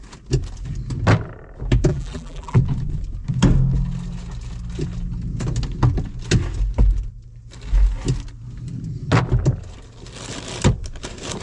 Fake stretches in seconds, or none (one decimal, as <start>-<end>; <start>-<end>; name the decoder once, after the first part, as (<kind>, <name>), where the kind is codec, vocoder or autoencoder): 1.9-2.6 (vocoder, BigVGAN v2)